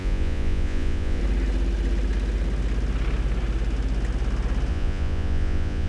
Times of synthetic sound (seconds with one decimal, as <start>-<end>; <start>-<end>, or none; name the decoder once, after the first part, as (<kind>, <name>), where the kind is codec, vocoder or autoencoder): 0.0-1.2 (vocoder, Vocos); 4.7-5.9